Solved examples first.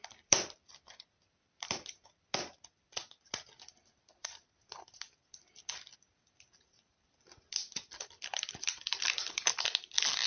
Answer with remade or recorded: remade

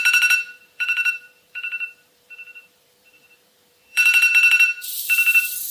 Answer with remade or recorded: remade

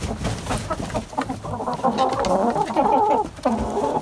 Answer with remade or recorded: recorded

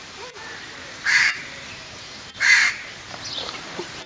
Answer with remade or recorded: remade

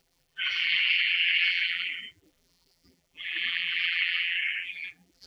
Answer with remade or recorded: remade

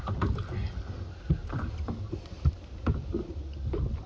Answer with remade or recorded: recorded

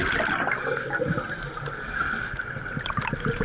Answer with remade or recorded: recorded